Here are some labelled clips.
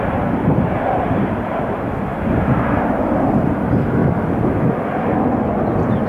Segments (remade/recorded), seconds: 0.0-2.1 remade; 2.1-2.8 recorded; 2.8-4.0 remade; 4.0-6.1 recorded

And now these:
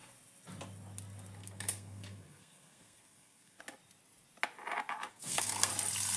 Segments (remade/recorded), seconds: 0.0-1.4 recorded; 1.4-3.6 remade; 3.6-5.1 recorded; 5.1-5.7 remade; 5.7-6.2 recorded

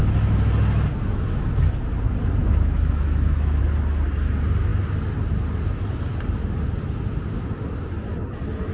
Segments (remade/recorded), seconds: 0.0-2.4 recorded; 2.4-3.6 remade; 3.6-8.7 recorded

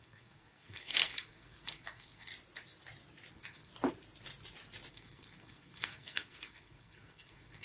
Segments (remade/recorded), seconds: 0.0-2.3 remade; 2.3-3.3 recorded; 3.3-3.7 remade; 3.7-4.9 recorded; 4.9-7.6 remade